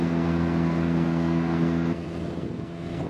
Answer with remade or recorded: remade